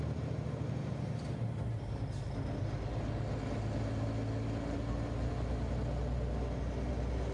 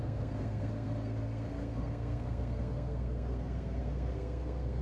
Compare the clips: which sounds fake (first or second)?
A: second